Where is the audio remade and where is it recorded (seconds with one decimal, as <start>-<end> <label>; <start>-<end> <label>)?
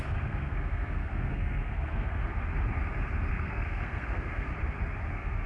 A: 0.0-2.2 remade; 2.2-3.3 recorded; 3.3-4.5 remade; 4.5-5.1 recorded; 5.1-5.5 remade